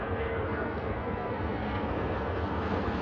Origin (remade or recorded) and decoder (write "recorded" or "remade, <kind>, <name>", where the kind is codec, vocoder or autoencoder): remade, codec, SNAC